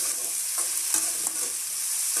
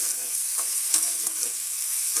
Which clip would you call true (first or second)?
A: first